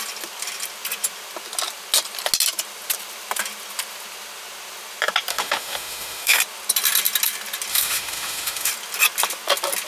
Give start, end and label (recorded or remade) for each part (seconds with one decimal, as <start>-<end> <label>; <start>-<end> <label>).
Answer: 0.0-5.3 recorded; 5.3-6.4 remade; 6.4-7.7 recorded; 7.7-8.7 remade; 8.7-9.9 recorded